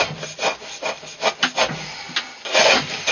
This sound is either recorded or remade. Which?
recorded